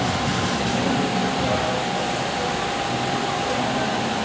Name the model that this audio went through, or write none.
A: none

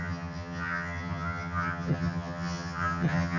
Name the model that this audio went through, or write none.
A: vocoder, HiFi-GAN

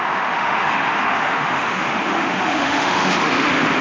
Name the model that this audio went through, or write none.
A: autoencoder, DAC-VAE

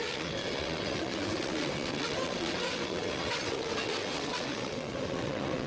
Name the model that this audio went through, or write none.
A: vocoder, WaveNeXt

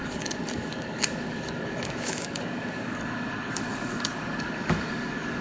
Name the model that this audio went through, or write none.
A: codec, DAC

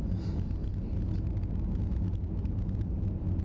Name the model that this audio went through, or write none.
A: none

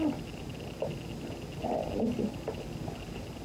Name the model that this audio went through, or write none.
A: none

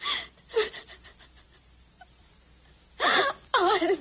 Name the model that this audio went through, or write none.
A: vocoder, BigVGAN v2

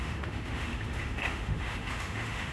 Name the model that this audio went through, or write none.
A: autoencoder, DAC-VAE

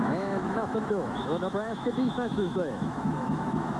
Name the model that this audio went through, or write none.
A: autoencoder, DAC-VAE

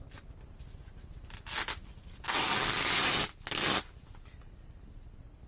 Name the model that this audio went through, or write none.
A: none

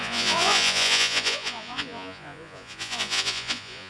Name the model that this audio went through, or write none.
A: vocoder, Vocos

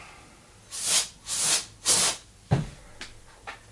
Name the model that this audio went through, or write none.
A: none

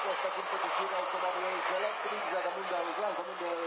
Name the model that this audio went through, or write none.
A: none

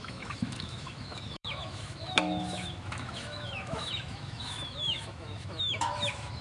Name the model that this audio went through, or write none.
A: autoencoder, DAC-VAE